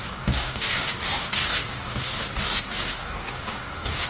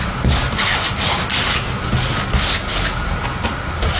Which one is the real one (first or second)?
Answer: second